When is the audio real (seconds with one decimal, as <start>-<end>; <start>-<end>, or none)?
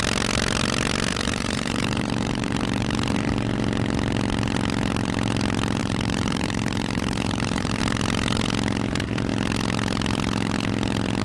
0.0-1.1; 3.3-5.8; 7.8-11.2